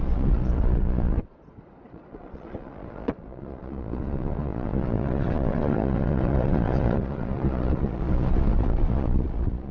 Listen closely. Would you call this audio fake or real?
fake